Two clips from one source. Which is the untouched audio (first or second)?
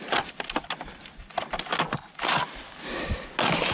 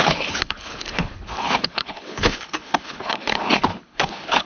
first